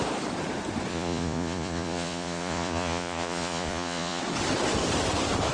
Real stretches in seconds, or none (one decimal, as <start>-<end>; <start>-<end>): 0.0-0.9; 4.2-5.5